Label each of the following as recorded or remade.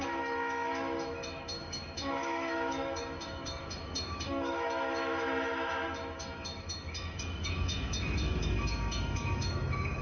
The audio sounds remade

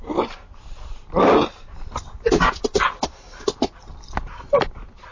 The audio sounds remade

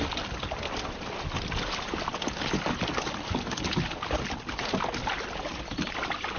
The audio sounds recorded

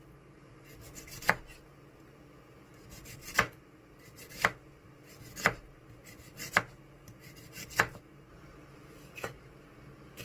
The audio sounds recorded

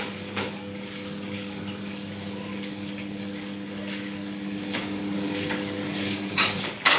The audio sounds remade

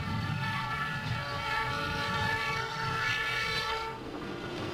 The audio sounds remade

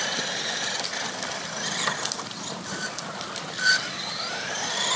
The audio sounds recorded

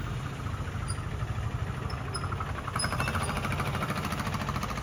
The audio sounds recorded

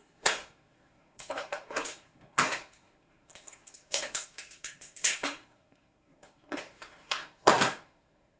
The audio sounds remade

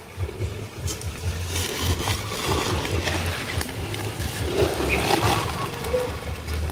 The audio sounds recorded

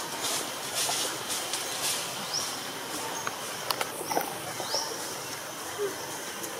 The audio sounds recorded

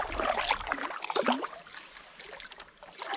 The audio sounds recorded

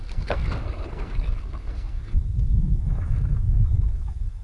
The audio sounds remade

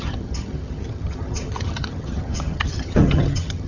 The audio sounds remade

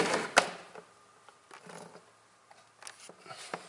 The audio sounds recorded